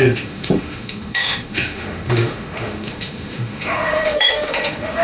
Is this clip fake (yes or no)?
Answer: yes